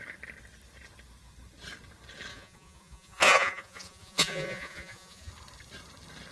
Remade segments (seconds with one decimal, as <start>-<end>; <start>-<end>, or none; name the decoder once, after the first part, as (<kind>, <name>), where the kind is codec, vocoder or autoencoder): 2.3-5.3 (vocoder, Vocos)